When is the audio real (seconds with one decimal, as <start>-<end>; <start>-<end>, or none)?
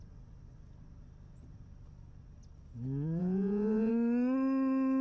0.0-3.2; 3.9-5.0